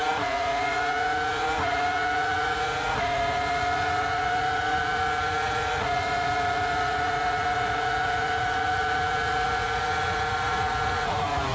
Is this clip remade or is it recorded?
remade